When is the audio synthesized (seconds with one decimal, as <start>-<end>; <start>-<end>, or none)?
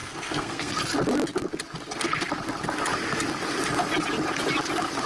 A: 0.0-0.8